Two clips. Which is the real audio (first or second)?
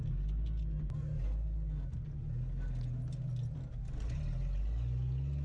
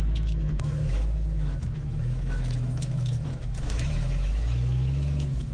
first